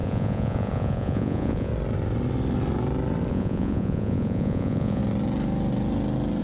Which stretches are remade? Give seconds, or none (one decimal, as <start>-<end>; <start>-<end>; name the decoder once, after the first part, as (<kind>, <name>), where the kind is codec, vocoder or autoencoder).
0.0-1.7 (vocoder, Vocos); 3.3-5.0